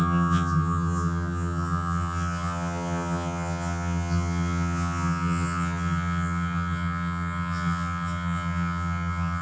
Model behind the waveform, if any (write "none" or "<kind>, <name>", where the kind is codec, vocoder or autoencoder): vocoder, HiFi-GAN